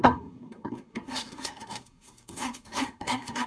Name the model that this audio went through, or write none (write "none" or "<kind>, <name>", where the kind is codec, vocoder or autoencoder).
codec, SNAC